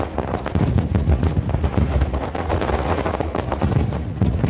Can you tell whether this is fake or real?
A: fake